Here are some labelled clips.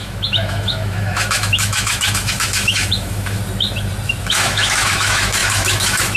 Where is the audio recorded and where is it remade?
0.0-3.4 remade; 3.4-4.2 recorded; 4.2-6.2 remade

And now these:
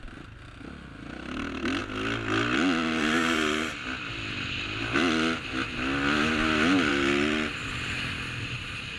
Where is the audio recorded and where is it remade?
0.0-9.0 recorded

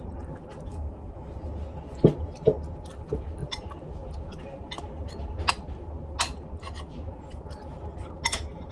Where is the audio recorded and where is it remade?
0.0-0.7 recorded; 0.7-1.3 remade; 1.3-8.7 recorded

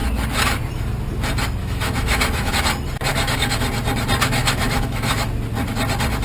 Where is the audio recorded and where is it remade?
0.0-1.6 recorded; 1.6-2.5 remade; 2.5-3.1 recorded; 3.1-3.7 remade; 3.7-4.4 recorded; 4.4-5.3 remade; 5.3-6.2 recorded

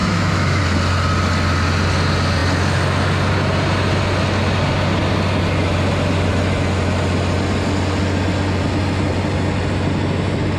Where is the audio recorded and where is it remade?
0.0-0.6 remade; 0.6-10.6 recorded

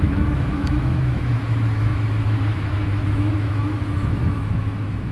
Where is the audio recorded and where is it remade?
0.0-5.1 remade